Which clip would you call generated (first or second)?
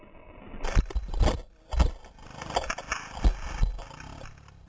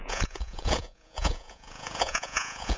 second